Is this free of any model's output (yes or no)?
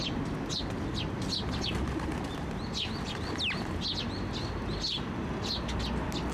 yes